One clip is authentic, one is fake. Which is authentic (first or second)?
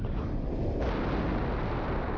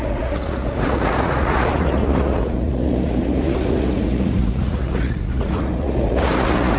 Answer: first